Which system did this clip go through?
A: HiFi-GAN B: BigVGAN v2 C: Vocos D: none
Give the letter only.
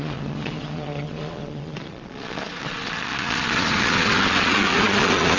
C